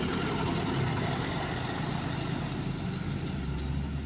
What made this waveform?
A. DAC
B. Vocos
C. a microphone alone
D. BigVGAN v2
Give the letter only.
C